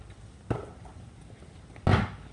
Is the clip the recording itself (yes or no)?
yes